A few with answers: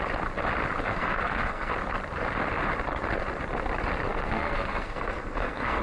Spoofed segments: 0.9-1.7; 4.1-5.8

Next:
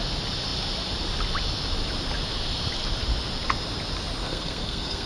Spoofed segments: 4.2-5.1

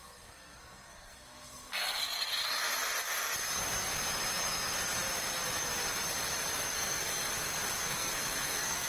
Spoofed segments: 0.0-2.0; 6.7-7.3; 7.8-8.9